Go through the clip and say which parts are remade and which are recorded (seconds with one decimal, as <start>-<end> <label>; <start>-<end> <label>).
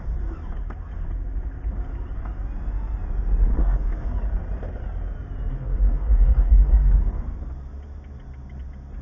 0.0-3.6 recorded; 3.6-4.1 remade; 4.1-5.5 recorded; 5.5-6.9 remade; 6.9-9.0 recorded